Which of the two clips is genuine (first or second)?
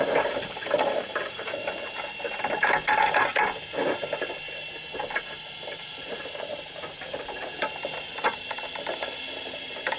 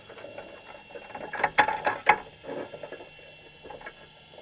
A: second